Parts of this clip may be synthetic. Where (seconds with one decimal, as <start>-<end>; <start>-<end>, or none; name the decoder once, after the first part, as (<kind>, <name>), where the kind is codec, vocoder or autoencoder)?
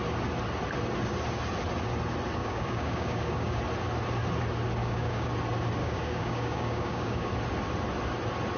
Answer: 2.4-3.6 (codec, DAC); 4.8-5.3; 5.8-7.3